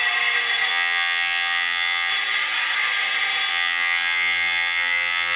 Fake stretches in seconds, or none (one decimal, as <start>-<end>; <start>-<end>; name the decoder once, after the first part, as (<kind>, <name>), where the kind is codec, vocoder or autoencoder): 0.7-2.1 (vocoder, WaveNeXt); 3.5-5.4